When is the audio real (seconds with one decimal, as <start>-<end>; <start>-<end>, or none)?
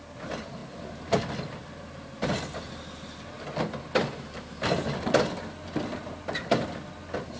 0.0-7.4